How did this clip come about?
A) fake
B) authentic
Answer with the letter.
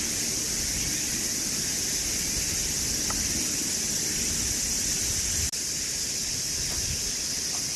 B